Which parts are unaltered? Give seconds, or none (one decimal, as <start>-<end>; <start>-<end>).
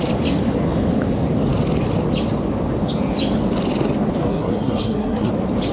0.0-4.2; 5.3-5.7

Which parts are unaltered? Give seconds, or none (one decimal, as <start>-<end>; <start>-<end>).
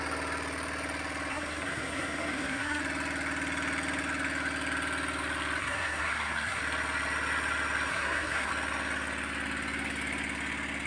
0.0-1.3; 2.8-5.6; 6.6-7.9; 8.5-10.9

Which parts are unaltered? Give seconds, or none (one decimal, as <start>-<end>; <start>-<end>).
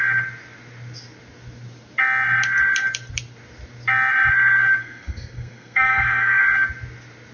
0.0-4.8; 6.4-7.3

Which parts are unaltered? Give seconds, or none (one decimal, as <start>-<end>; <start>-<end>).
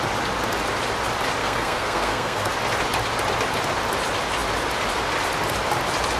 0.0-1.4; 2.5-6.2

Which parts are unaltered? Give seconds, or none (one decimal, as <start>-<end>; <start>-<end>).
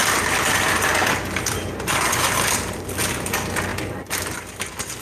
0.0-5.0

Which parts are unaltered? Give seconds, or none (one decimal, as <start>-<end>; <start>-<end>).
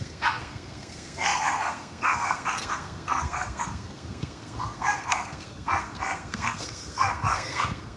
none